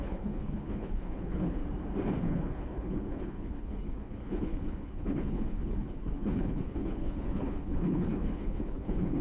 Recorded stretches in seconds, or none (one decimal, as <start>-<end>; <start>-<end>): 1.6-2.2